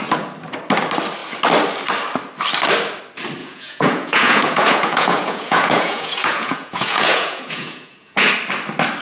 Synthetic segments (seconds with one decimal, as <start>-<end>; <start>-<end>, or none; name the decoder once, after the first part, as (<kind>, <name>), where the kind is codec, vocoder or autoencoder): 3.4-8.3 (vocoder, Vocos)